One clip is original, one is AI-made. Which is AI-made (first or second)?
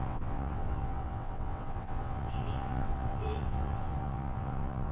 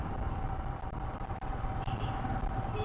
first